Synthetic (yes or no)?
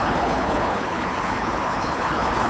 yes